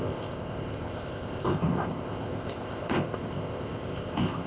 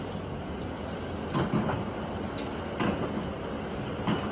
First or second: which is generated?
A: first